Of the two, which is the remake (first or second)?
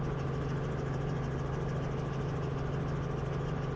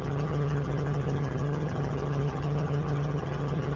second